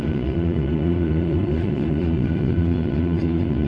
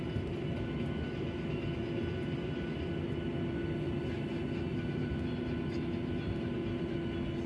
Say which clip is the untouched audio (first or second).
second